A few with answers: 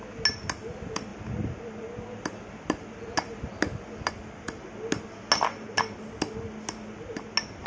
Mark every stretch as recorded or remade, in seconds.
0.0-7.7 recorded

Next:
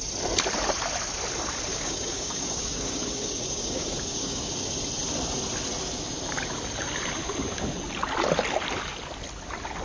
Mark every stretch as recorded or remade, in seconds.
0.0-1.7 recorded; 1.7-4.5 remade; 4.5-9.8 recorded

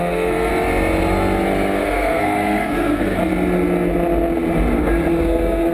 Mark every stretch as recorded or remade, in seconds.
0.0-0.5 remade; 0.5-1.8 recorded; 1.8-3.2 remade; 3.2-5.2 recorded; 5.2-5.7 remade

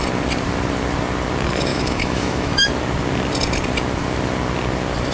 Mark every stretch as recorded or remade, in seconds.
0.0-1.7 recorded; 1.7-2.7 remade; 2.7-5.1 recorded